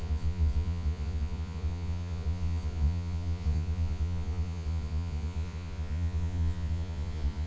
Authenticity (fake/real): fake